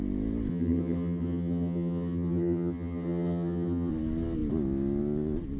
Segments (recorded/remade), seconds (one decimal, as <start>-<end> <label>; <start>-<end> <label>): 0.0-0.5 recorded; 0.5-3.9 remade; 3.9-5.6 recorded